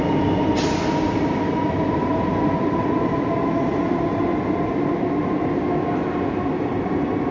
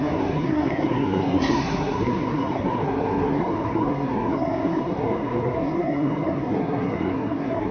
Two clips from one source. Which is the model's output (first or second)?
second